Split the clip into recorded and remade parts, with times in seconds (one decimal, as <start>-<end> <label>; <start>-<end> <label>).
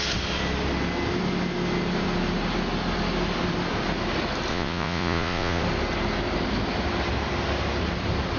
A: 0.0-4.5 recorded; 4.5-5.6 remade; 5.6-8.4 recorded